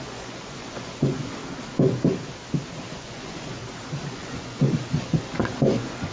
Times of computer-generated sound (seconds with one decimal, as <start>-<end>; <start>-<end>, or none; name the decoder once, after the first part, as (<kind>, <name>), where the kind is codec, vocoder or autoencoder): 0.0-1.4 (vocoder, Vocos); 2.9-3.6; 4.1-6.1